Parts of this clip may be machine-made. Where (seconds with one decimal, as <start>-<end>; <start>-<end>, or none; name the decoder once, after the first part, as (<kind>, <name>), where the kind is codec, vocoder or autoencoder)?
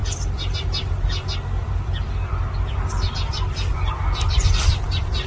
none